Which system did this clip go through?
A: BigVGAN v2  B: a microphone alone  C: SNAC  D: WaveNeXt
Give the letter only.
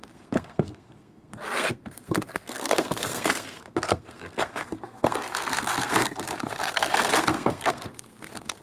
C